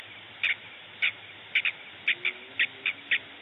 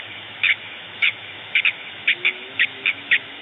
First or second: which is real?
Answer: first